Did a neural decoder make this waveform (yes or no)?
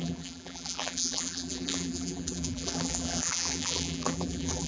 yes